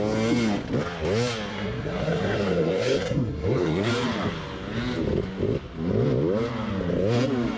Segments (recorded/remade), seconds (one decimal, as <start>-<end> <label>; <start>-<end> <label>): 0.0-1.5 recorded; 1.5-3.9 remade; 3.9-7.6 recorded